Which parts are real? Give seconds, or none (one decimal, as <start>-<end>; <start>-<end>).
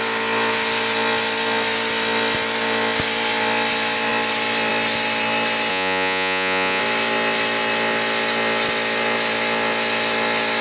0.0-5.7; 6.8-10.6